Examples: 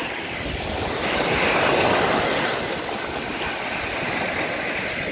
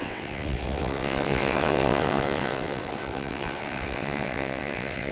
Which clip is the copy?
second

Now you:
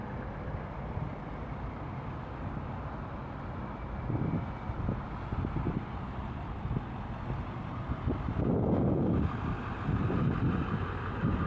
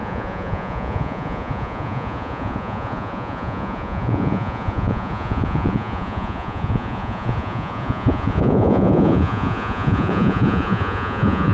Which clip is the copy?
second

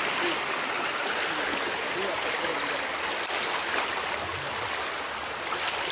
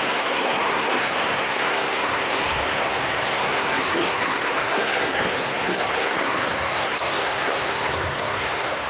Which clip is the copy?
second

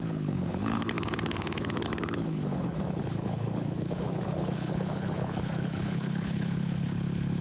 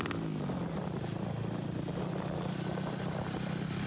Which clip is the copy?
first